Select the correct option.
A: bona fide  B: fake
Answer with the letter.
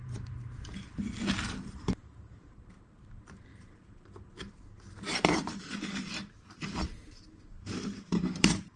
B